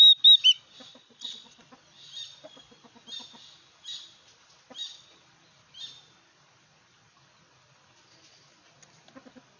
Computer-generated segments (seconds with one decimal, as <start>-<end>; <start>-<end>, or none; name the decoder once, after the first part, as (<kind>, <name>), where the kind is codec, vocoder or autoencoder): 0.9-1.6 (vocoder, Vocos)